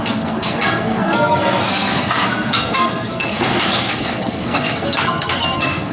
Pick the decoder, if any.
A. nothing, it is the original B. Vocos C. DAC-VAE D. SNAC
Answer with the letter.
D